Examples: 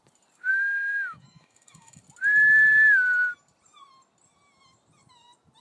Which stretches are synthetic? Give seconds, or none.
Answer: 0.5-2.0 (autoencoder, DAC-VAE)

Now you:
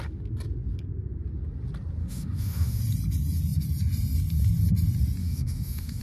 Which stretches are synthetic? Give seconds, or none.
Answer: 2.0-2.8 (autoencoder, DAC-VAE); 5.2-6.0

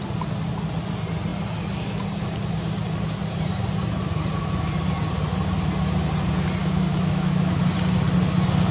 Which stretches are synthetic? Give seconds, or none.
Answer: 6.6-7.6 (autoencoder, DAC-VAE)

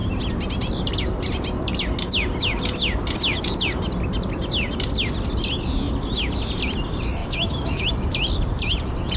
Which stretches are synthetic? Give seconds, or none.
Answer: 7.2-7.9 (autoencoder, DAC-VAE)

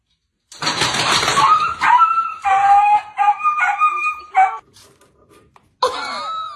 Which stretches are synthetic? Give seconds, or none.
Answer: none

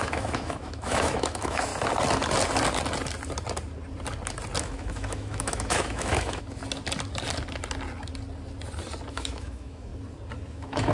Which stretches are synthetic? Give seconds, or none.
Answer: 0.0-1.7 (autoencoder, DAC-VAE); 4.6-6.6; 9.1-9.9; 10.5-10.9

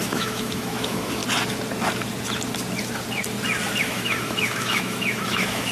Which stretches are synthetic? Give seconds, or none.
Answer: 0.0-1.2 (autoencoder, DAC-VAE); 3.8-5.7

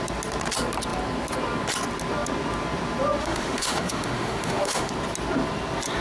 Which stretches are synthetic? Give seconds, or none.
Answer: 3.2-4.9 (autoencoder, DAC-VAE)